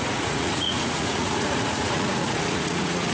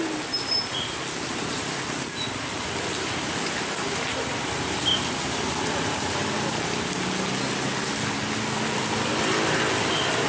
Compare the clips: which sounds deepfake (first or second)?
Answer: first